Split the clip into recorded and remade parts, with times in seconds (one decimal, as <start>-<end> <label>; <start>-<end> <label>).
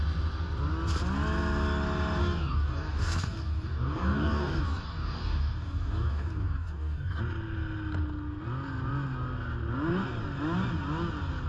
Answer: 0.0-2.2 recorded; 2.2-7.2 remade; 7.2-11.5 recorded